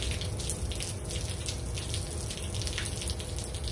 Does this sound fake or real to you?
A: real